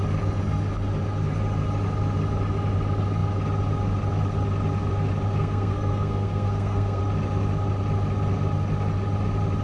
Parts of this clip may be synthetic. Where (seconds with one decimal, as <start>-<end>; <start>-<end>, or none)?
5.4-7.0

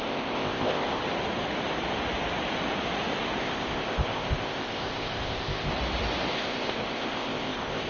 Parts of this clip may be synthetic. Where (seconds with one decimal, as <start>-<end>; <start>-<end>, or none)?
0.0-1.0; 3.4-5.7; 6.3-7.9